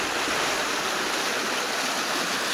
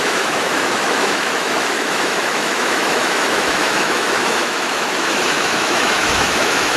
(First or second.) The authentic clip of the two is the first